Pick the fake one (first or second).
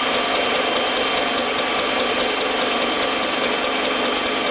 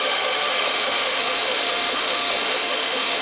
second